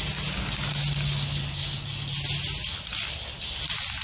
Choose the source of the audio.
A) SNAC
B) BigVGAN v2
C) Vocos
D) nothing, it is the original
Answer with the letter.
D